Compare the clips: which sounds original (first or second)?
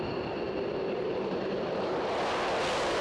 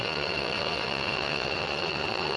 first